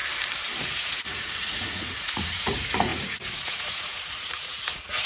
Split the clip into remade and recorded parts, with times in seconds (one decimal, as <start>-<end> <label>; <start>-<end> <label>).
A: 0.0-0.6 recorded; 0.6-5.1 remade